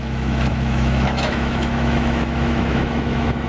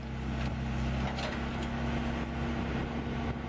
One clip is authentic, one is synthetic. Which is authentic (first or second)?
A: second